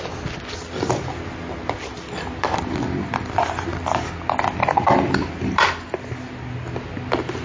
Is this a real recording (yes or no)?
yes